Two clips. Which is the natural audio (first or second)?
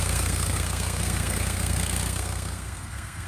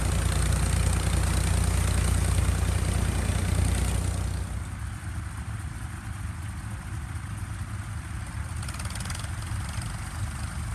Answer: second